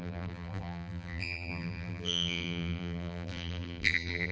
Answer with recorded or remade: remade